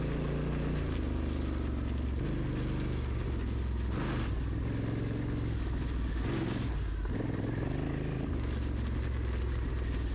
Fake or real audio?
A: real